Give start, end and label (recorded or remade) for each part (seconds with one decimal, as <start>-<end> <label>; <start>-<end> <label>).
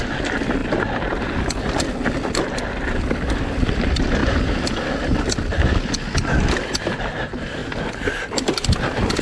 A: 0.0-9.2 recorded